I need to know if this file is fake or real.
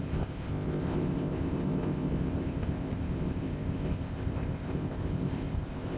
fake